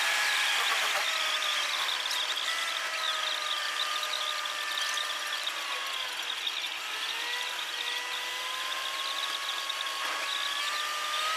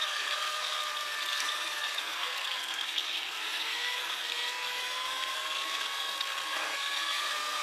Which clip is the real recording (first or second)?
first